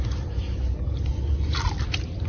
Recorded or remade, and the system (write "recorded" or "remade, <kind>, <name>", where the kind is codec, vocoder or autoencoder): recorded